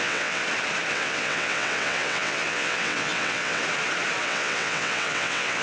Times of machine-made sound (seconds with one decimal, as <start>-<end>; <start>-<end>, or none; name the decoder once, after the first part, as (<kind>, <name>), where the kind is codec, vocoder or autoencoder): 0.0-0.4 (vocoder, WaveNeXt); 0.9-3.6; 4.2-5.6